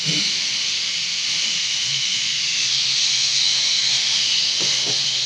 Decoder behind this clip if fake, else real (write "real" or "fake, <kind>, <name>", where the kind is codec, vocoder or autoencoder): fake, autoencoder, DAC-VAE